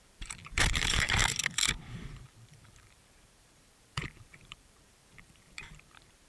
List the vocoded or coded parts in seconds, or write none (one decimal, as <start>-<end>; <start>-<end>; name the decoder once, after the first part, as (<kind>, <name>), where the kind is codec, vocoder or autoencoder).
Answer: 0.0-1.2 (vocoder, BigVGAN v2); 1.9-6.3